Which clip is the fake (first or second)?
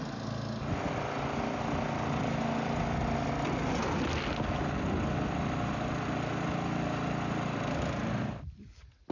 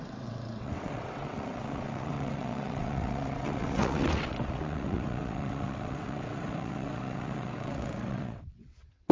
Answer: second